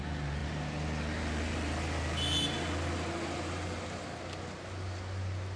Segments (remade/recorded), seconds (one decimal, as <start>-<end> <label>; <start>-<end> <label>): 0.0-5.6 recorded